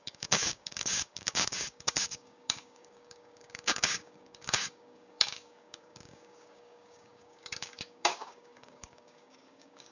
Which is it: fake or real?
fake